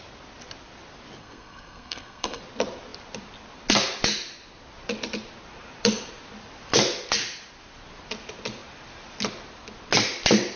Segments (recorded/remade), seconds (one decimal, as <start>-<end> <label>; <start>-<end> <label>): 0.0-1.2 recorded; 1.2-2.4 remade; 2.4-10.6 recorded